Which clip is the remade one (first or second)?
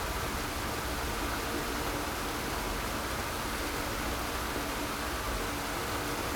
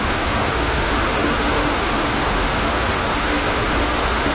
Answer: second